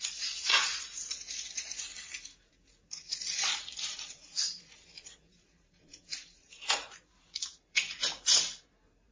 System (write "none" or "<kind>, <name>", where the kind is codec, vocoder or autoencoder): vocoder, Vocos